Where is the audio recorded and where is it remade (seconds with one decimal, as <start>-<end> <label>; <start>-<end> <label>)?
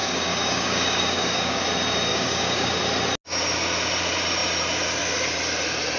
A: 0.0-1.6 remade; 1.6-2.1 recorded; 2.1-2.8 remade; 2.8-6.0 recorded